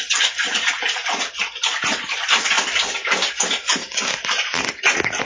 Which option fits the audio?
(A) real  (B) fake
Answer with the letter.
A